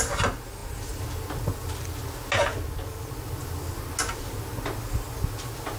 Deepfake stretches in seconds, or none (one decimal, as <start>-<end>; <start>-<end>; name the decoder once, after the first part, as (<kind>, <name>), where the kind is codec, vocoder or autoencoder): none